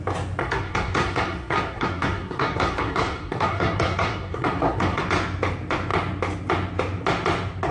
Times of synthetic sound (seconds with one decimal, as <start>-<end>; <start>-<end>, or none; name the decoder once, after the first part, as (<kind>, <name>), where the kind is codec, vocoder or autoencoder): 0.4-5.0 (codec, SNAC)